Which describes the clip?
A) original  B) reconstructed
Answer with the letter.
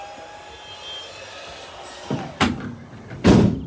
A